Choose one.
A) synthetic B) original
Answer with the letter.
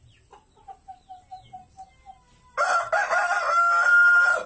B